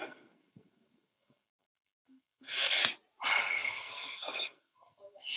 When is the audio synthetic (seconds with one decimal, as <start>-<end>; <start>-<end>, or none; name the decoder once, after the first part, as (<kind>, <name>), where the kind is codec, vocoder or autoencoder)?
0.0-2.8 (codec, SNAC); 3.4-5.4